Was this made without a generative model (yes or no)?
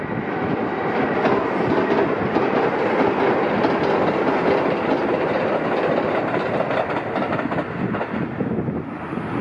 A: yes